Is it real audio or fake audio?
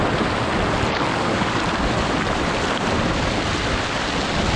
real